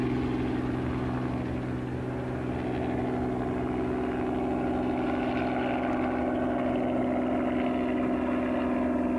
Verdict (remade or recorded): recorded